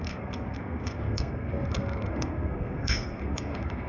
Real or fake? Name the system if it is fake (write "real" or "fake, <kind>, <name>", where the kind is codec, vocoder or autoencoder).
fake, codec, SNAC